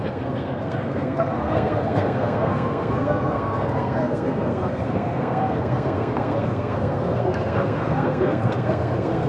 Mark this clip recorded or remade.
remade